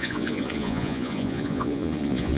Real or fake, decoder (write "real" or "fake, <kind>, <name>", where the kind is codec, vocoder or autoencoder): fake, vocoder, Vocos